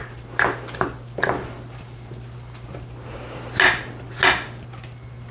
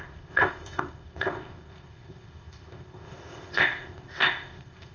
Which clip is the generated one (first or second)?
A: second